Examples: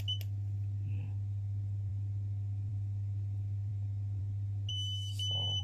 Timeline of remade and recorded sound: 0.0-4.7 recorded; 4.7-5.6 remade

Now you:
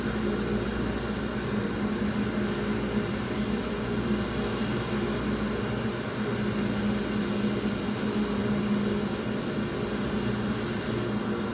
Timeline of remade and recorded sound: 0.0-11.5 recorded

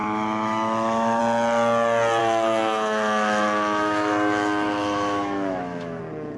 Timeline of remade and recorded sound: 0.0-1.2 remade; 1.2-2.2 recorded; 2.2-6.0 remade; 6.0-6.4 recorded